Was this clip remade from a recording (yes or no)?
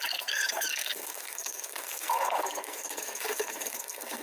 yes